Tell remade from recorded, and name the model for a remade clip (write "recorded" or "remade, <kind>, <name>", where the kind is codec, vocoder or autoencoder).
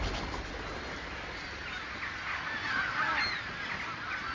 recorded